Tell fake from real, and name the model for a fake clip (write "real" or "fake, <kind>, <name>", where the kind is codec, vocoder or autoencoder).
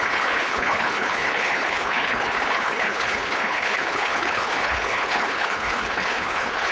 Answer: fake, codec, HILCodec